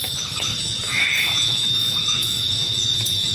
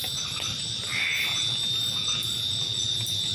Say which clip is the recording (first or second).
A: second